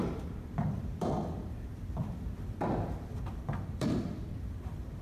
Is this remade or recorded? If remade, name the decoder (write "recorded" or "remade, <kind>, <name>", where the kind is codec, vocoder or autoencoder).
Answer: remade, vocoder, BigVGAN v2